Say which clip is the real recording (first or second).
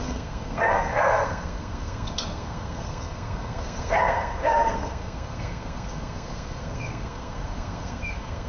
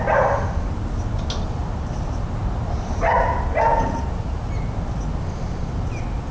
second